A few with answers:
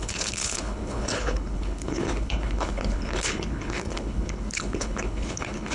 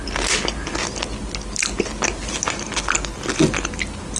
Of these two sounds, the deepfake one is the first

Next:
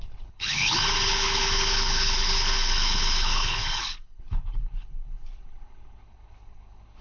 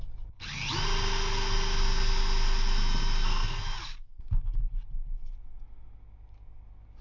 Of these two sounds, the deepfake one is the first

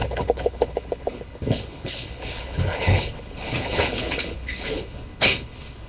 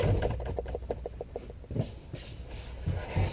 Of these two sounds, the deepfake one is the first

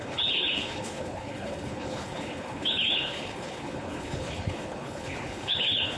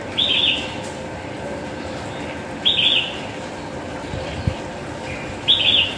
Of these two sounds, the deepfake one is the first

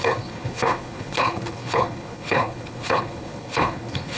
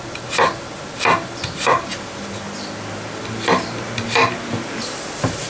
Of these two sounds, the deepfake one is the first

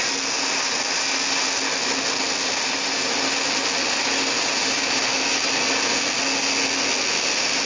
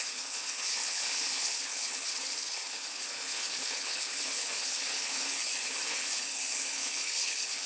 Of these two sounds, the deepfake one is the second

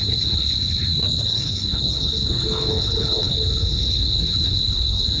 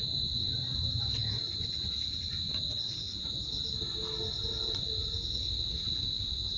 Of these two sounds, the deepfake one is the first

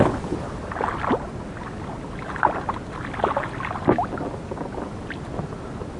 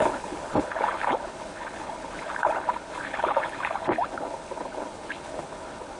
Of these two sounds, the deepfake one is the second